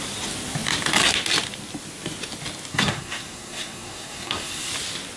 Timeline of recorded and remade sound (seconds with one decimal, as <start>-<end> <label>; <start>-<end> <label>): 0.0-2.7 recorded; 2.7-4.7 remade; 4.7-5.2 recorded